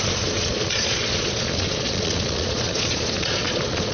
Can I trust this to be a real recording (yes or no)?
no